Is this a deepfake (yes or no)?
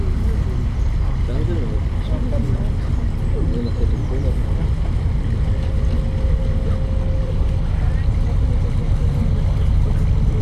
no